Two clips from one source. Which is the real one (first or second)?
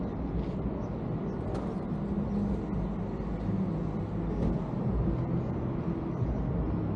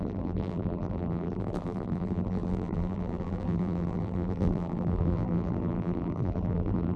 first